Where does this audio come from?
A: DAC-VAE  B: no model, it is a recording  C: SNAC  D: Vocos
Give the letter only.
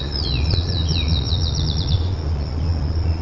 D